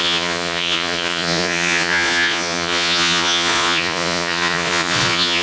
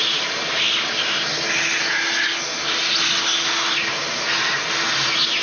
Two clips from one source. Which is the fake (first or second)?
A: first